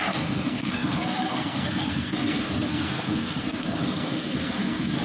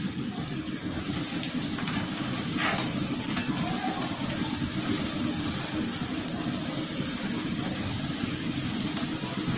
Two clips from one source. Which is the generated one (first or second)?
first